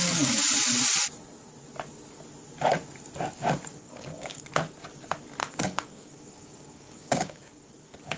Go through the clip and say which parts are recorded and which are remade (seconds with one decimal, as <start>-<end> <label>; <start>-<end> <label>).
0.0-3.7 recorded; 3.7-4.5 remade; 4.5-5.4 recorded; 5.4-7.5 remade; 7.5-8.2 recorded